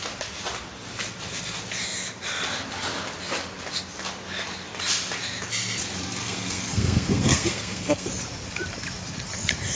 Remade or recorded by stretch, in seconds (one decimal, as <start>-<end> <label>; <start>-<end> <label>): 0.0-6.2 recorded; 6.2-8.1 remade; 8.1-9.7 recorded